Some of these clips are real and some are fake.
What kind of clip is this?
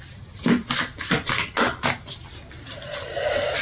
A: real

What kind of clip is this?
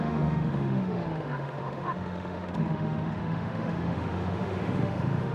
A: fake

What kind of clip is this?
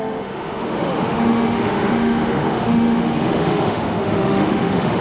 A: fake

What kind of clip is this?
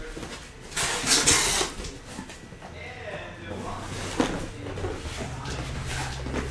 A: real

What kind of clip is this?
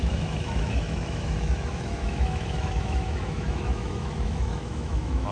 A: fake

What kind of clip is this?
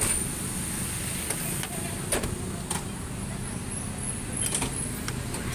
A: real